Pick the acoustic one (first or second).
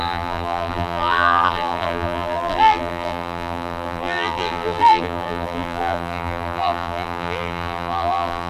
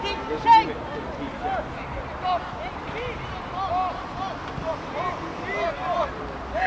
second